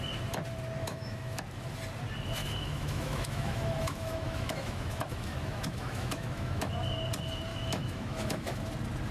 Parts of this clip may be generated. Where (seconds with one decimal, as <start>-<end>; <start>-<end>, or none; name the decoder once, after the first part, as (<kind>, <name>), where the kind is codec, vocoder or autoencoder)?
0.8-1.4 (autoencoder, DAC-VAE); 2.4-6.7; 7.5-8.7